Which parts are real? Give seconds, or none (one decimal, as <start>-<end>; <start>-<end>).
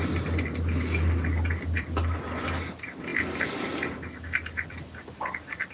0.0-5.7